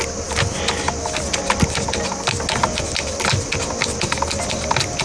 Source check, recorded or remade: recorded